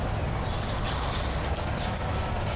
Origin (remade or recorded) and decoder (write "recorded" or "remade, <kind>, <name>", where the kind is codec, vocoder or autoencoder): recorded